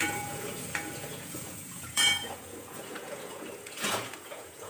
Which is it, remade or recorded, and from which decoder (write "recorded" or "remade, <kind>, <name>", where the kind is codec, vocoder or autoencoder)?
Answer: remade, vocoder, Vocos